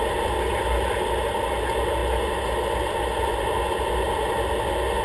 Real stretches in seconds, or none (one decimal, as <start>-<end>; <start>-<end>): 0.0-5.0